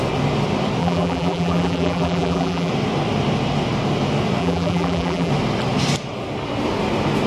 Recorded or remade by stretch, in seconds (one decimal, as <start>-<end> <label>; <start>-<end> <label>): 0.0-0.8 recorded; 0.8-2.7 remade; 2.7-4.4 recorded; 4.4-5.3 remade; 5.3-7.3 recorded

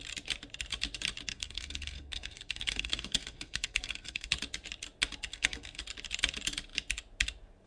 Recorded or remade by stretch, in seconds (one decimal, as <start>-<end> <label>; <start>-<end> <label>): 0.0-1.3 recorded; 1.3-4.3 remade; 4.3-5.3 recorded; 5.3-5.8 remade; 5.8-7.7 recorded

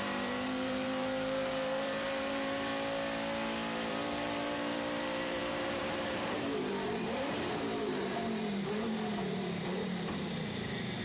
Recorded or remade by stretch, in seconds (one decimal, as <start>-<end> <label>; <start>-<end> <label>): 0.0-2.7 remade; 2.7-3.9 recorded; 3.9-11.0 remade